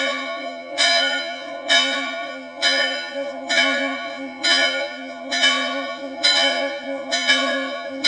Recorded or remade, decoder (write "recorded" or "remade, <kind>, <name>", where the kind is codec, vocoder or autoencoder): remade, vocoder, Vocos